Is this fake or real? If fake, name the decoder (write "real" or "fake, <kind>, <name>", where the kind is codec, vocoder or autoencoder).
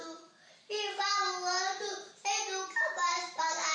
real